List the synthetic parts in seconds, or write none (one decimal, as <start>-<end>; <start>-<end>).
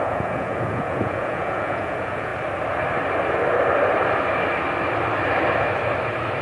0.0-2.3